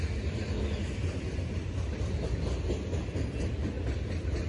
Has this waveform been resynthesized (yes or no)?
no